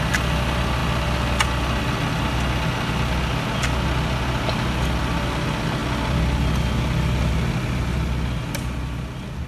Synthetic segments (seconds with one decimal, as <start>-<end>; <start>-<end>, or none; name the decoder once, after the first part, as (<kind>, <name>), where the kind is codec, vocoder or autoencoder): none